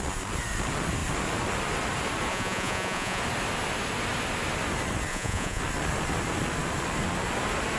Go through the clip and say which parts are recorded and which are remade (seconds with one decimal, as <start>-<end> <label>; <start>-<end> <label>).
0.0-2.3 recorded; 2.3-3.2 remade; 3.2-5.1 recorded; 5.1-5.6 remade; 5.6-7.8 recorded